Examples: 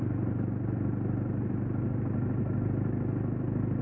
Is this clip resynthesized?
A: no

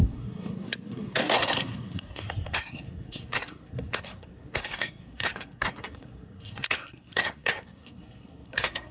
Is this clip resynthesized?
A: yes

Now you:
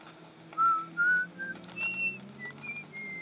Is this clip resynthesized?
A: no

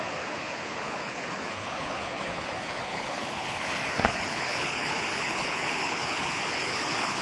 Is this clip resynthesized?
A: yes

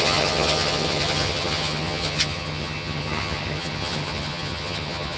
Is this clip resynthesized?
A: yes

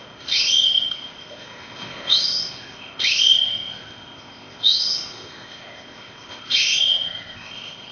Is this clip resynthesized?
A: yes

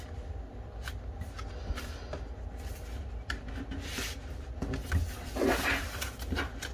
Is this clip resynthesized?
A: no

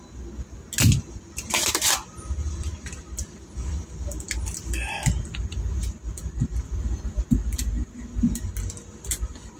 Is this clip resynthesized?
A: no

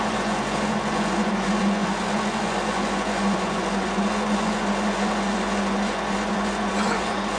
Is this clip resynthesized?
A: yes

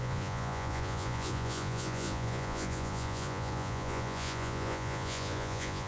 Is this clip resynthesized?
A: yes